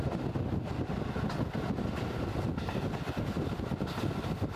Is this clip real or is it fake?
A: real